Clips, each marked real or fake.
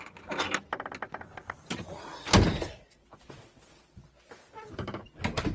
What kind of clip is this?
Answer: real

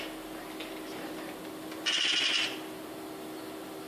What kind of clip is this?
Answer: real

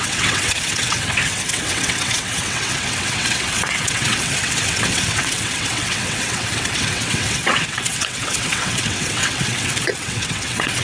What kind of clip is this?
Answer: fake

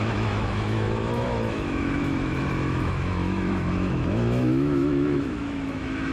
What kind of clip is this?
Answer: fake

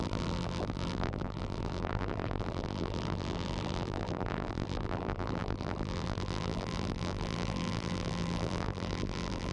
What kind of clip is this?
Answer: fake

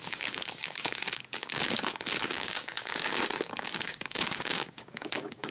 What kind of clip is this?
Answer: fake